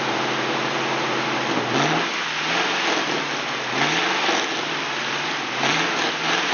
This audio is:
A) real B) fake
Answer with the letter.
B